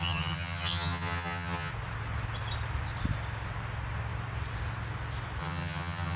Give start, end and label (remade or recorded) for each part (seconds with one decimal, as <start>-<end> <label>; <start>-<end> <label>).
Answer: 0.0-1.7 remade; 1.7-5.4 recorded; 5.4-6.2 remade